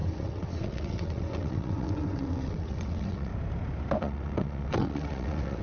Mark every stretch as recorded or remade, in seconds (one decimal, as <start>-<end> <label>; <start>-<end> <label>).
0.0-3.3 remade; 3.3-4.0 recorded; 4.0-5.6 remade